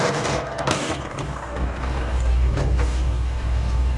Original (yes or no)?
no